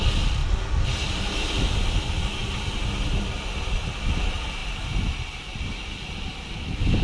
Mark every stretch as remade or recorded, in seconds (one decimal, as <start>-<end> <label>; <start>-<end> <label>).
0.0-7.0 recorded